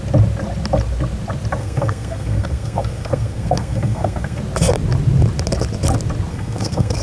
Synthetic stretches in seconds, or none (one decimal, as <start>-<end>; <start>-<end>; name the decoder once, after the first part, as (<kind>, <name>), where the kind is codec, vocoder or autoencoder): 1.6-4.4 (codec, SNAC); 6.3-7.0